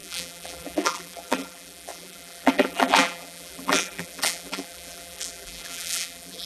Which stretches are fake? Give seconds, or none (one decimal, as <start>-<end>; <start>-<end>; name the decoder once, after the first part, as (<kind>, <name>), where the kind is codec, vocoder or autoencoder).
0.0-6.5 (vocoder, BigVGAN v2)